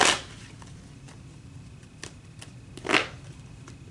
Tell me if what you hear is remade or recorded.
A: recorded